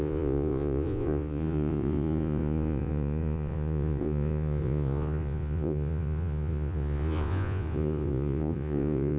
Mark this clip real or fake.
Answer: fake